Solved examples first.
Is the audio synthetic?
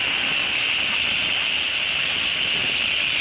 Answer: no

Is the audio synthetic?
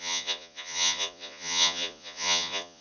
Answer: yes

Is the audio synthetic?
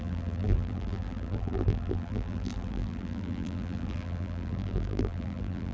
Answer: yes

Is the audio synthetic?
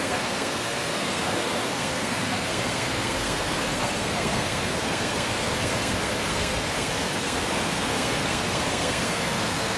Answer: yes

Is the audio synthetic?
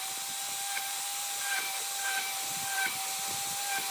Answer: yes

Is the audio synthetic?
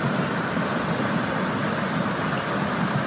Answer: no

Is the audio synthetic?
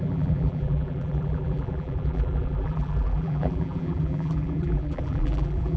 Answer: yes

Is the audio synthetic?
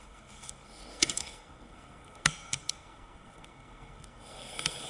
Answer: yes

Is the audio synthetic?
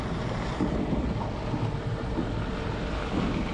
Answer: no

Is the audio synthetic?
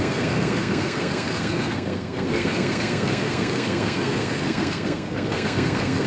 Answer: yes